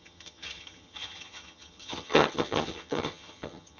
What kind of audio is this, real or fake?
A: fake